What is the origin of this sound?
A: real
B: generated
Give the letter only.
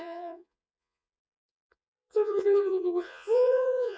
B